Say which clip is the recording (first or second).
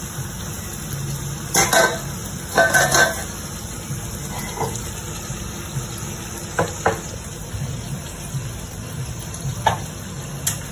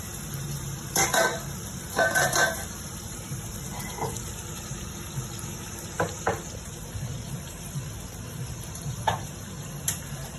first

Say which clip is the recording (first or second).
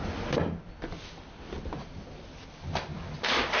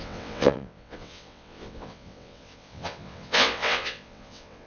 first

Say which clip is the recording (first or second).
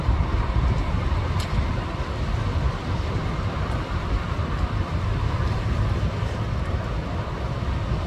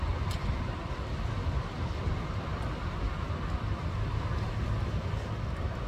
second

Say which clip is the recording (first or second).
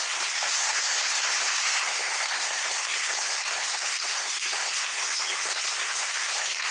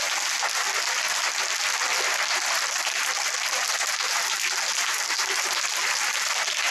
second